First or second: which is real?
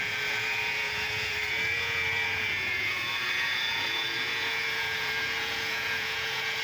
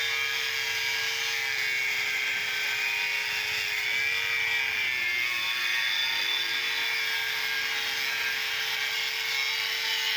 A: second